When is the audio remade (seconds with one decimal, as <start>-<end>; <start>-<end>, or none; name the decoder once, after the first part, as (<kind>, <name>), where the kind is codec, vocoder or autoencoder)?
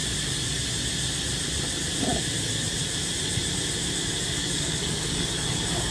4.4-5.9 (codec, DAC)